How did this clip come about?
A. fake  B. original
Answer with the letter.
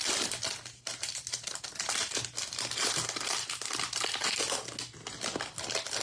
B